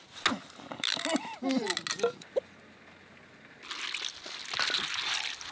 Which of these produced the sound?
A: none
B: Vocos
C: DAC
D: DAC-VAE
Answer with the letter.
A